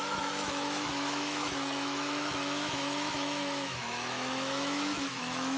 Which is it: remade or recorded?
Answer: remade